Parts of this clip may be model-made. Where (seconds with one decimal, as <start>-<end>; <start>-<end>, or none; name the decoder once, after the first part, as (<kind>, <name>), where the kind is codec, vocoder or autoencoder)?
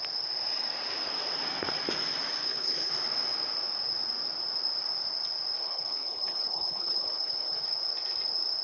2.4-2.9 (codec, HILCodec); 5.6-7.6